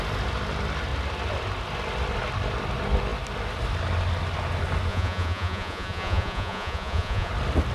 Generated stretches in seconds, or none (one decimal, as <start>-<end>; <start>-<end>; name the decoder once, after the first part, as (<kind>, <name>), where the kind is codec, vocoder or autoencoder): 4.9-7.3 (vocoder, Vocos)